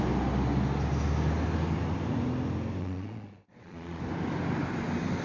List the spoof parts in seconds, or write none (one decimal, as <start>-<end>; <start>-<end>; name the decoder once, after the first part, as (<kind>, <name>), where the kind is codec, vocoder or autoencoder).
2.8-4.0 (vocoder, Vocos)